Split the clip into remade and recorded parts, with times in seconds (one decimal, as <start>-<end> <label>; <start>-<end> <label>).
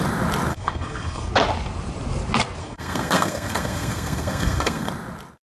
0.0-0.5 recorded; 0.5-1.3 remade; 1.3-2.6 recorded; 2.6-4.9 remade; 4.9-5.5 recorded